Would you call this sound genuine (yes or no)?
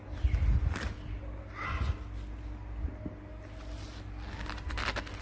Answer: yes